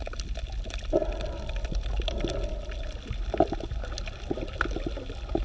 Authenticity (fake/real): real